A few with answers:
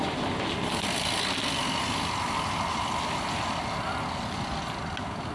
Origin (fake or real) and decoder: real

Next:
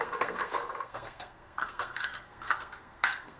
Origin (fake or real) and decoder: fake, codec, SNAC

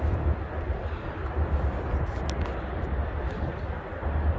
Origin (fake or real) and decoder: real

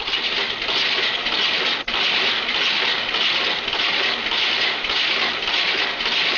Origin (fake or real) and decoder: real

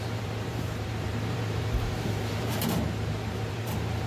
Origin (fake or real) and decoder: fake, vocoder, BigVGAN v2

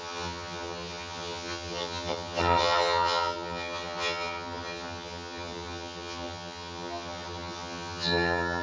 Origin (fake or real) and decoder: fake, vocoder, HiFi-GAN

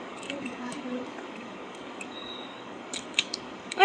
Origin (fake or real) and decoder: fake, codec, DAC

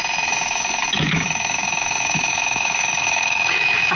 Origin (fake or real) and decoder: fake, autoencoder, DAC-VAE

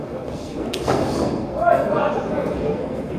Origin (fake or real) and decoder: fake, codec, SNAC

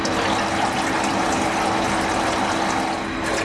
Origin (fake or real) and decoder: real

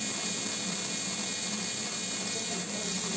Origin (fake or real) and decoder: fake, vocoder, BigVGAN v2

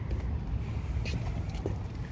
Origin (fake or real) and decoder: real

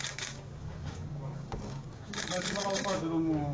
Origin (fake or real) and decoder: fake, codec, DAC